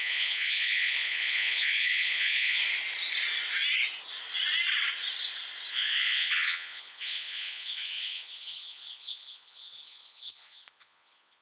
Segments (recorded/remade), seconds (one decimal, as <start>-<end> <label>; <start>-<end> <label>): 0.0-2.6 remade; 2.6-5.7 recorded; 5.7-11.4 remade